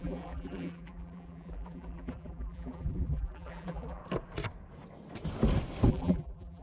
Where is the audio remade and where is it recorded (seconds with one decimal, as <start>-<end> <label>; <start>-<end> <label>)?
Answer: 0.0-4.0 remade; 4.0-5.9 recorded; 5.9-6.6 remade